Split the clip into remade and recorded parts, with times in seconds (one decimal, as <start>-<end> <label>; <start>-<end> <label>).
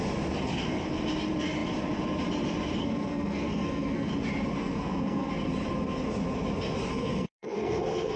0.0-2.8 recorded; 2.8-4.1 remade; 4.1-4.6 recorded; 4.6-5.3 remade; 5.3-6.9 recorded; 6.9-8.2 remade